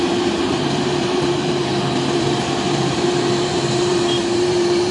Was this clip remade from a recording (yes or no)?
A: yes